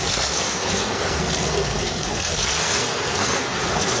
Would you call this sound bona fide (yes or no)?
no